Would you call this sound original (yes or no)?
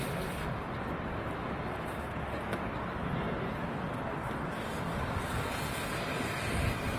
yes